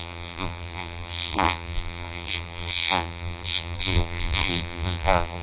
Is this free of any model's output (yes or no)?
no